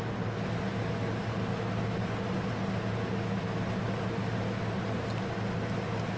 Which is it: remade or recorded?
recorded